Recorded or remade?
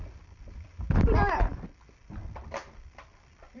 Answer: remade